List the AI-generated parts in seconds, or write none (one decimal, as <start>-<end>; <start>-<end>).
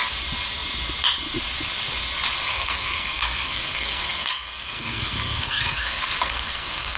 2.5-7.0